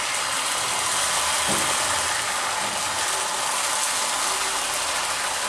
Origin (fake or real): real